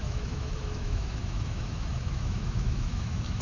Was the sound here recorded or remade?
remade